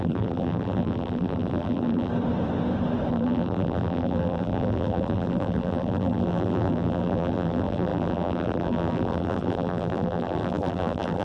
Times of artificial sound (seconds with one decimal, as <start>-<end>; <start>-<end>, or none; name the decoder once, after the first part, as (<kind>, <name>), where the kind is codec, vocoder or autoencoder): 0.0-2.1 (vocoder, BigVGAN v2); 3.1-11.2

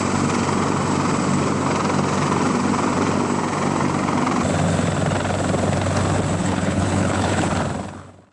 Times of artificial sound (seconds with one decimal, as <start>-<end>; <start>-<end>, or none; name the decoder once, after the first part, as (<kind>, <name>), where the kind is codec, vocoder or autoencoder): 6.4-7.5 (codec, HILCodec)

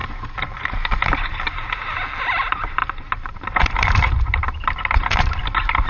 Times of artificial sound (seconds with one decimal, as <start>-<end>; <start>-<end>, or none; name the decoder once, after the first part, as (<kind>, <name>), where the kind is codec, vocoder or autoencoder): 0.0-1.7 (vocoder, BigVGAN v2); 2.8-5.4

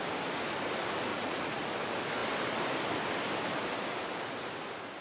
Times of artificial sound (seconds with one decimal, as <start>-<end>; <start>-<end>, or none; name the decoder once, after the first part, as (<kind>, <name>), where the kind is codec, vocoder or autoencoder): 1.1-1.7 (vocoder, Vocos)